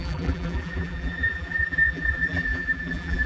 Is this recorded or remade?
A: remade